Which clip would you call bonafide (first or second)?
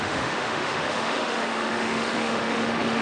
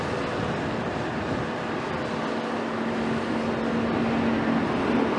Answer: second